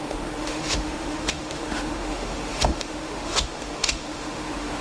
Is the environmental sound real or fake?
fake